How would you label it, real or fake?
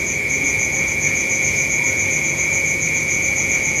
fake